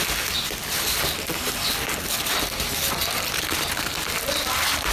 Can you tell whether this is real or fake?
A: real